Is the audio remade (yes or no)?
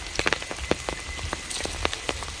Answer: no